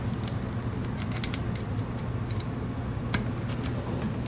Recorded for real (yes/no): yes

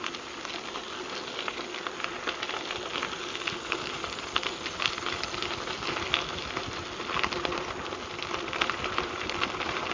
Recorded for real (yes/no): yes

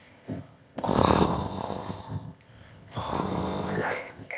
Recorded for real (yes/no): no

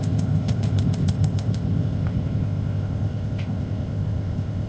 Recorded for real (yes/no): no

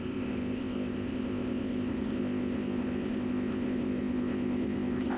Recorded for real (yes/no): no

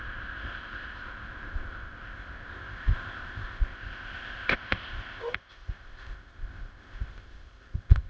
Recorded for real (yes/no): no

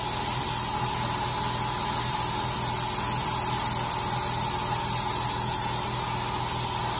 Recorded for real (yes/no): yes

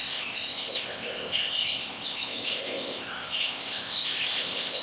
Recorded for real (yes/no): no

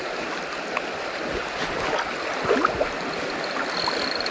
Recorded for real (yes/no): yes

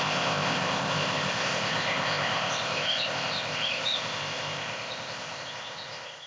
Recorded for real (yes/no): no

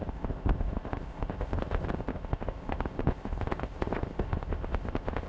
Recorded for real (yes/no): no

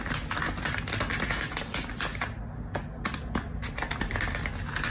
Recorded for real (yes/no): yes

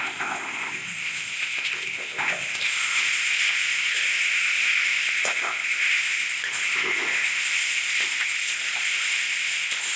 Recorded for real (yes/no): no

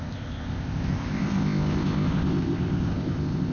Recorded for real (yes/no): no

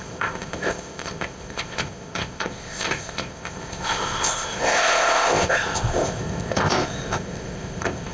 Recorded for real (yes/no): no